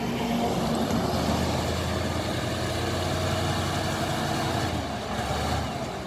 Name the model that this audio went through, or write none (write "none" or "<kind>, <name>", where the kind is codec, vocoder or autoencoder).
none